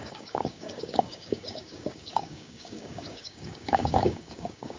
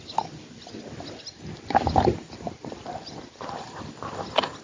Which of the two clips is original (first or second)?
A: second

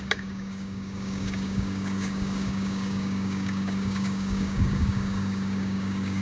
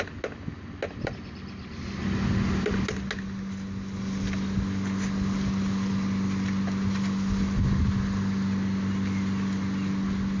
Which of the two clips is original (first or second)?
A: second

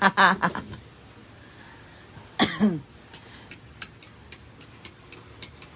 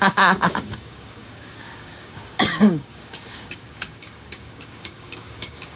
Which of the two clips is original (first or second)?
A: first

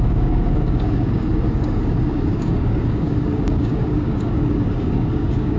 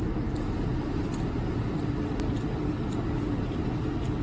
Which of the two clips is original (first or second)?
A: second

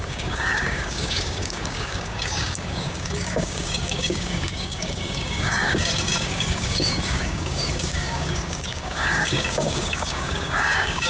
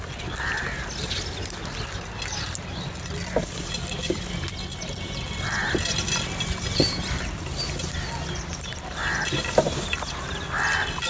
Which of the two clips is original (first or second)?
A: second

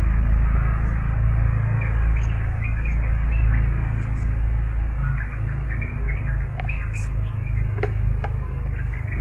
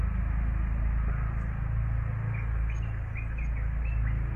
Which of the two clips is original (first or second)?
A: second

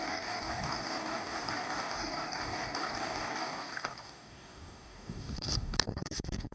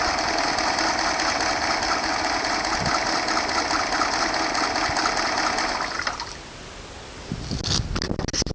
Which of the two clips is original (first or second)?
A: second